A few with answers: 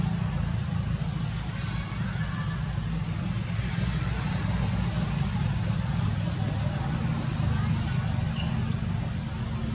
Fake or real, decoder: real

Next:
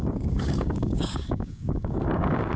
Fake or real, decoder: fake, codec, DAC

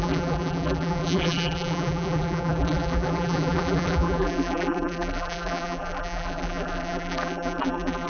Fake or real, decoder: fake, vocoder, BigVGAN v2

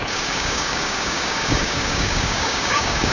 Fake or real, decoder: fake, codec, DAC